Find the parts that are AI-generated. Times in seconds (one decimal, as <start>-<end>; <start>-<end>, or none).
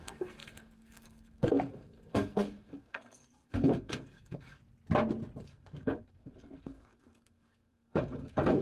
0.0-4.6; 5.4-8.6